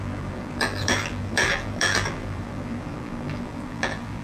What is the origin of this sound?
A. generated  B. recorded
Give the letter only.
A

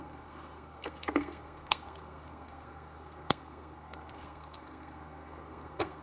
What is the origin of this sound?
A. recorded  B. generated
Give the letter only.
B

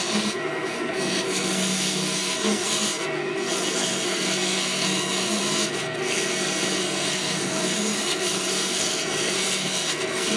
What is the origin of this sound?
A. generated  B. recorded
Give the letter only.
A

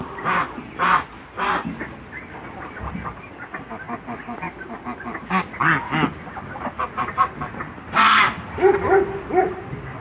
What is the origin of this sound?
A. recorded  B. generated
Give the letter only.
A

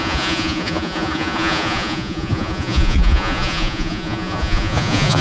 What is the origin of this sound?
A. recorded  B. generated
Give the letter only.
B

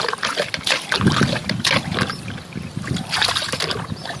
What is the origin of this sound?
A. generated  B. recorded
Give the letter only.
B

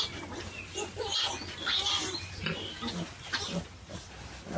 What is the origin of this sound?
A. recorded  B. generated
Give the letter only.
A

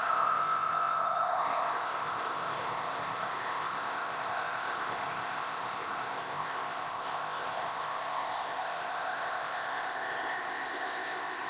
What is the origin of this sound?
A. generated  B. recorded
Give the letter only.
A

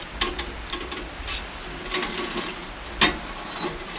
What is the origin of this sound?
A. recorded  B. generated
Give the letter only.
A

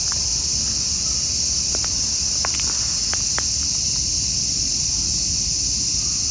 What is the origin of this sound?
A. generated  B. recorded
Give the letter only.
B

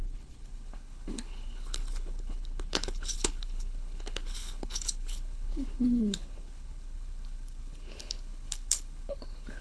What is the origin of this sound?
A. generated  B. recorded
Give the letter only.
A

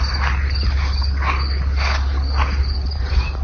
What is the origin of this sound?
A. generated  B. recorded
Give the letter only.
B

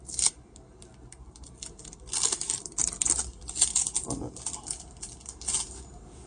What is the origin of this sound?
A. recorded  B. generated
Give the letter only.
A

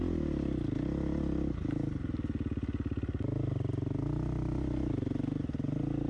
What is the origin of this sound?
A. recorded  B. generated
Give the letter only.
A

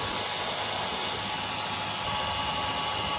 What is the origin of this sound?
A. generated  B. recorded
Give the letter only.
B